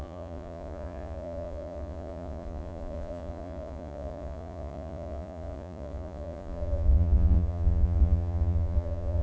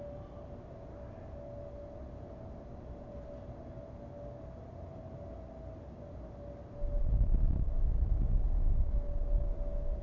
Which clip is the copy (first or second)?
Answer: first